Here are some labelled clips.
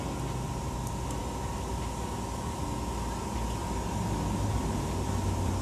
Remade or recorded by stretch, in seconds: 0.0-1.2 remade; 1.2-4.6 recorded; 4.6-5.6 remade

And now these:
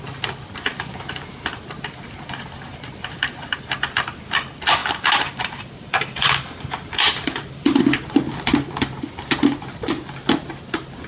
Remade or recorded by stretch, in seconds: 0.0-0.7 recorded; 0.7-1.3 remade; 1.3-2.7 recorded; 2.7-3.7 remade; 3.7-4.8 recorded; 4.8-7.8 remade; 7.8-11.1 recorded

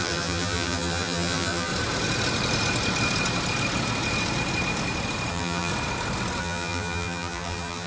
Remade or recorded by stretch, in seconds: 0.0-1.7 remade; 1.7-5.3 recorded; 5.3-5.7 remade; 5.7-6.4 recorded; 6.4-7.9 remade

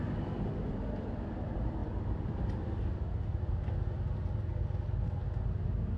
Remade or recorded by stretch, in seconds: 0.0-6.0 recorded

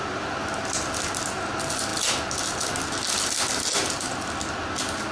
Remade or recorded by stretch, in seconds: 0.0-5.1 recorded

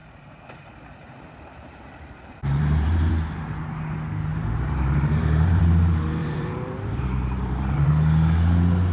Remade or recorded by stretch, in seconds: 0.0-3.1 remade; 3.1-4.3 recorded; 4.3-5.6 remade; 5.6-6.2 recorded; 6.2-7.9 remade; 7.9-8.9 recorded

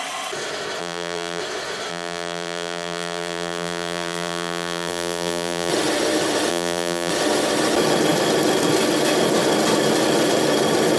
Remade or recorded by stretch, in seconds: 0.0-0.8 recorded; 0.8-1.4 remade; 1.4-1.9 recorded; 1.9-5.7 remade; 5.7-6.5 recorded; 6.5-7.1 remade; 7.1-11.0 recorded